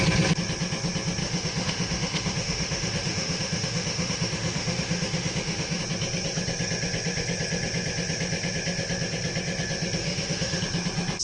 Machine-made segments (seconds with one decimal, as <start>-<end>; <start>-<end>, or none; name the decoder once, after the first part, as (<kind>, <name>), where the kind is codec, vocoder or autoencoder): 1.2-5.8 (autoencoder, DAC-VAE); 10.0-10.6